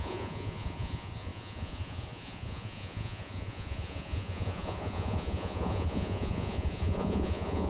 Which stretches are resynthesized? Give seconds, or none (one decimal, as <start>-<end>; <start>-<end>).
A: 0.0-7.7